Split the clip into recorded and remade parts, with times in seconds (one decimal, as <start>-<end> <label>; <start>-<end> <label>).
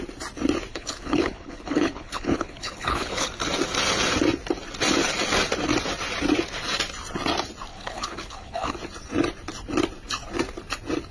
0.0-0.7 recorded; 0.7-3.3 remade; 3.3-7.7 recorded; 7.7-8.7 remade; 8.7-11.1 recorded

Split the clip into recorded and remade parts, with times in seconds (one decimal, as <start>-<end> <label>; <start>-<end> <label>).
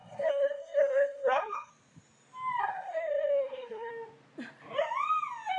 0.0-1.7 remade; 1.7-2.6 recorded; 2.6-3.9 remade; 3.9-5.6 recorded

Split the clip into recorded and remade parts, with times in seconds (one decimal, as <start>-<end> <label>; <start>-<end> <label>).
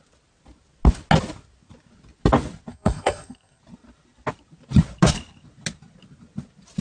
0.0-2.7 recorded; 2.7-3.6 remade; 3.6-6.8 recorded